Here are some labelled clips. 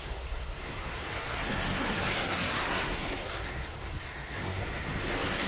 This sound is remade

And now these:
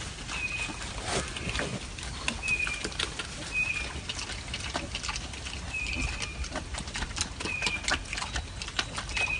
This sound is recorded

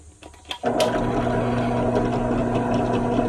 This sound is recorded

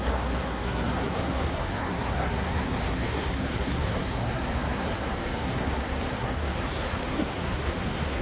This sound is remade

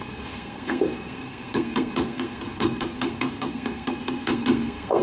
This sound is remade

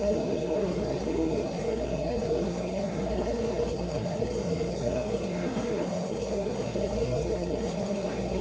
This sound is remade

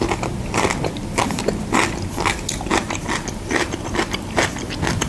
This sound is recorded